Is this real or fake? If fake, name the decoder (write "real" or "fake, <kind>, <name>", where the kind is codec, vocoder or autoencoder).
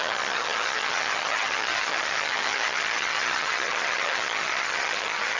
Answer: fake, vocoder, HiFi-GAN